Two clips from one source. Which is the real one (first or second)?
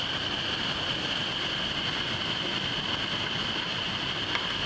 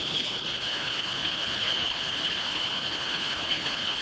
first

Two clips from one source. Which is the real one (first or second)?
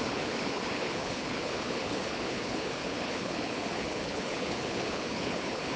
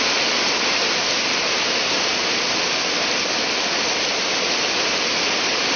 second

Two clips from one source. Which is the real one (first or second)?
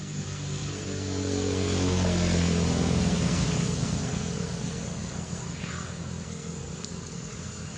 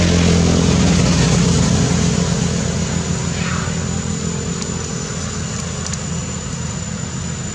second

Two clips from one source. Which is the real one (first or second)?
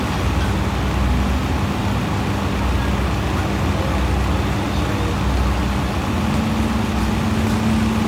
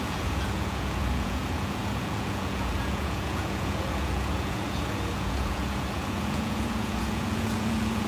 first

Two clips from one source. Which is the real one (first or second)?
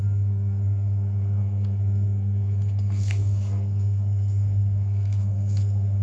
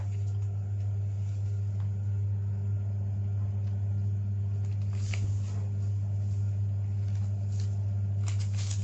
second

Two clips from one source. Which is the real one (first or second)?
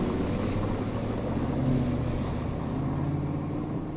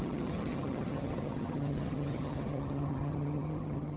first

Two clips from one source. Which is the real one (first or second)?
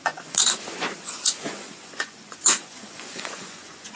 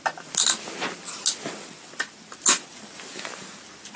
second